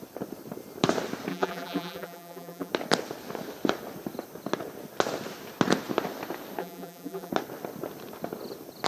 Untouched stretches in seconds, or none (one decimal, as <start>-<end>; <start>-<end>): 0.0-1.3; 2.7-6.6; 7.3-8.9